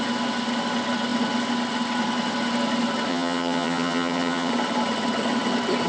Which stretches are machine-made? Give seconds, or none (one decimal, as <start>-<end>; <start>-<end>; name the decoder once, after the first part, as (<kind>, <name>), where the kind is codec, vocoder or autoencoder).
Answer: 3.1-4.5 (vocoder, HiFi-GAN)